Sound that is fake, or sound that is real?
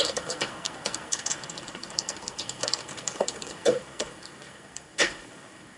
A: fake